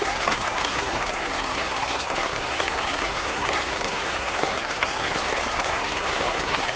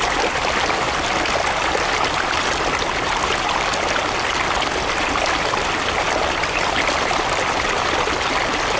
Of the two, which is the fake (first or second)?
first